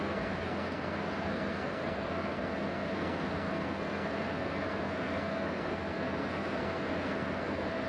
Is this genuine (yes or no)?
no